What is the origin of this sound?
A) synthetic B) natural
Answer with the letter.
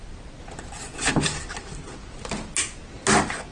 B